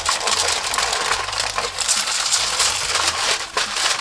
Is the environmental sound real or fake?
real